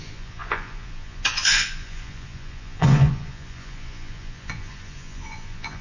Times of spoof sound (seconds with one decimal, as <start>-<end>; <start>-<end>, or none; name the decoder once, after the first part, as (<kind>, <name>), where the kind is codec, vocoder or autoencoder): 0.0-5.8 (vocoder, Vocos)